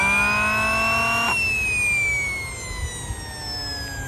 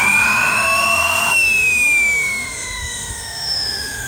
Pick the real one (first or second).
first